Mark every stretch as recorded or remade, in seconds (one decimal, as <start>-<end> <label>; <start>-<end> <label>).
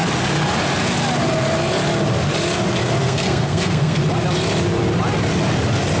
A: 0.0-3.0 recorded; 3.0-4.0 remade; 4.0-6.0 recorded